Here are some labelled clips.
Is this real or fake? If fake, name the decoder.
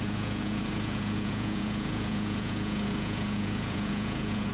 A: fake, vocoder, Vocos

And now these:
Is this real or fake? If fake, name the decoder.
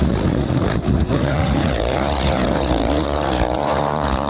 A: fake, vocoder, Vocos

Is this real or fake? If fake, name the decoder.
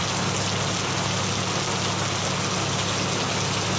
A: real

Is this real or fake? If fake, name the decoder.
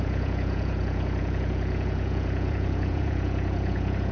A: fake, vocoder, Vocos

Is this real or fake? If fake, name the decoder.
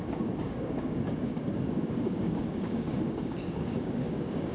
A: fake, codec, DAC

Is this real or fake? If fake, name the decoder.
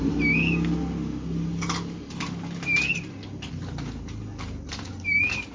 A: real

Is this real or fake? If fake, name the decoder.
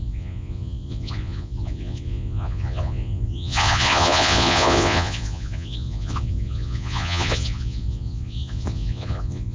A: fake, vocoder, Vocos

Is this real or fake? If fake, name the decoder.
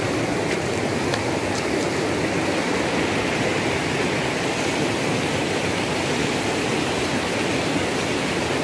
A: real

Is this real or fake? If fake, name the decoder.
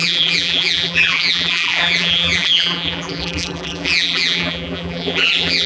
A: fake, vocoder, BigVGAN v2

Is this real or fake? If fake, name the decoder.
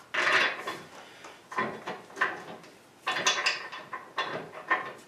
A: real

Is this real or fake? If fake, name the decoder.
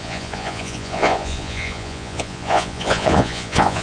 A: fake, vocoder, Vocos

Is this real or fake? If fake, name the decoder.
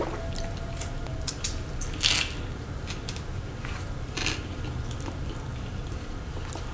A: real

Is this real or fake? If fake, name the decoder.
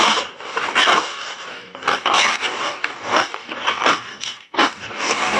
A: fake, codec, DAC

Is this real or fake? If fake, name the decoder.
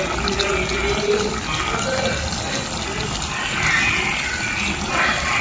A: real